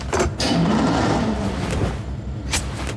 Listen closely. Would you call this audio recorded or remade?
recorded